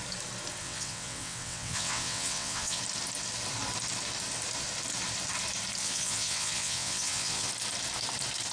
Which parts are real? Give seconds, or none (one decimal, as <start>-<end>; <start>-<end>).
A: 0.0-0.6; 2.8-5.8; 7.5-8.5